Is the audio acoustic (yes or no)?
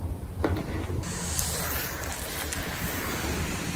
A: yes